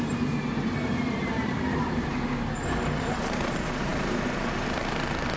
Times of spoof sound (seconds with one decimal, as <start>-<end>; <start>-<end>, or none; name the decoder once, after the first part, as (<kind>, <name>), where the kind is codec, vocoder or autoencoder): 0.0-2.1 (vocoder, BigVGAN v2); 3.0-5.4